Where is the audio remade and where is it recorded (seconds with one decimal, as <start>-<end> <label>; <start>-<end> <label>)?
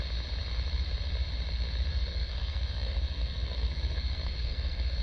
0.0-1.9 recorded; 1.9-5.0 remade